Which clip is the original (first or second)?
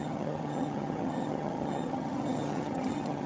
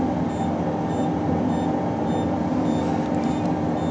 second